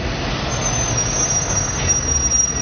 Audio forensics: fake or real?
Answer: real